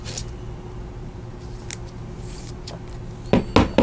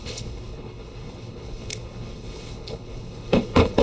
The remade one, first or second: second